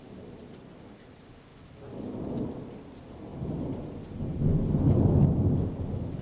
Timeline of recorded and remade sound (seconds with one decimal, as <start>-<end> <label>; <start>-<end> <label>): 0.0-6.2 recorded